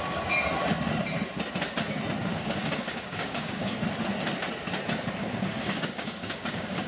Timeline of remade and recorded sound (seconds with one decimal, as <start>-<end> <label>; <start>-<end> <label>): 0.0-2.3 recorded; 2.3-3.8 remade; 3.8-5.2 recorded; 5.2-6.9 remade